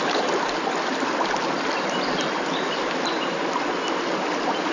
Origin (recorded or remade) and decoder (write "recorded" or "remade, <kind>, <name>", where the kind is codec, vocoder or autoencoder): recorded